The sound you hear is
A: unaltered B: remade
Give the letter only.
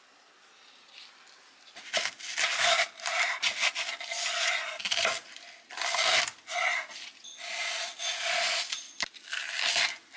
A